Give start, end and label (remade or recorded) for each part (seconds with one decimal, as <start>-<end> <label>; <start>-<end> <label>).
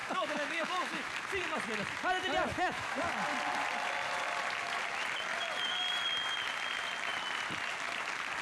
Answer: 0.0-1.1 remade; 1.1-2.5 recorded; 2.5-3.0 remade; 3.0-8.4 recorded